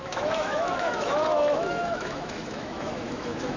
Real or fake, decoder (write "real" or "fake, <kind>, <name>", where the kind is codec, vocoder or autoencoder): fake, autoencoder, DAC-VAE